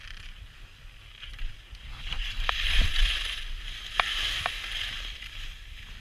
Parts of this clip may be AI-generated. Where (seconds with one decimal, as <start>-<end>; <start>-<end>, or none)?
1.9-2.5